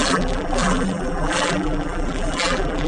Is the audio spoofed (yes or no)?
yes